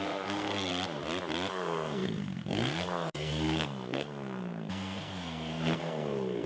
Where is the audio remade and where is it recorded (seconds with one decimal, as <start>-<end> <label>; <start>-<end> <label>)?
0.0-0.7 remade; 0.7-1.5 recorded; 1.5-6.5 remade